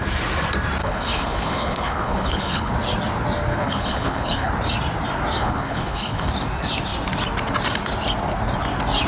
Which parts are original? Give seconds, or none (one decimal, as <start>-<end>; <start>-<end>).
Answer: 0.0-0.8; 2.7-3.5; 4.5-5.4; 6.3-9.1